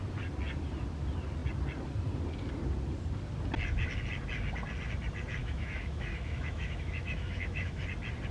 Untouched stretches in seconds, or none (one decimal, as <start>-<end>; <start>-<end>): 0.0-5.4; 7.8-8.3